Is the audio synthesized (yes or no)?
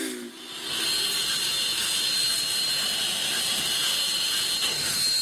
no